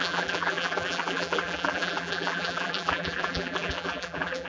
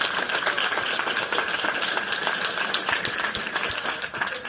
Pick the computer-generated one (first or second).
first